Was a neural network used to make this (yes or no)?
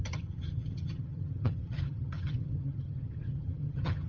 yes